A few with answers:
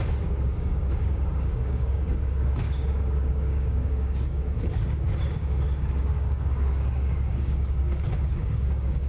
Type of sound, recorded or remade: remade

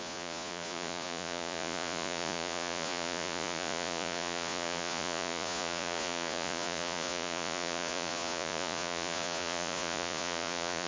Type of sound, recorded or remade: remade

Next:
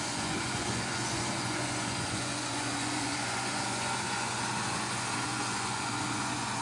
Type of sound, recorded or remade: remade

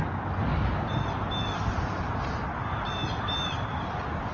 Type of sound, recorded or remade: recorded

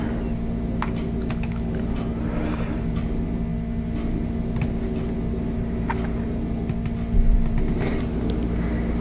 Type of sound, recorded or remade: recorded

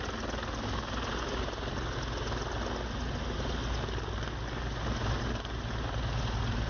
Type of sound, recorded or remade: recorded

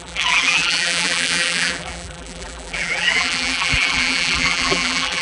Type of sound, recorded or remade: remade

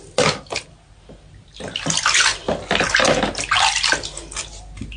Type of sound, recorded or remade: recorded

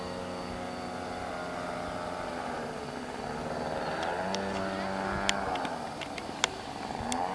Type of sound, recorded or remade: recorded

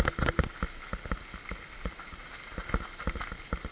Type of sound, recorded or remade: recorded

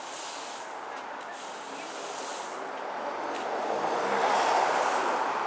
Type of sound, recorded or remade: recorded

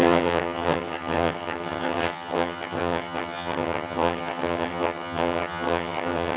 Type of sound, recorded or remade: remade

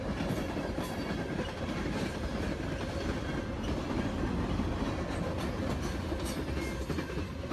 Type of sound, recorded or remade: recorded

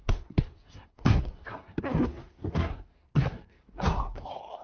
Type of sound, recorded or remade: remade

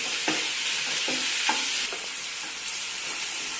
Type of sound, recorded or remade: recorded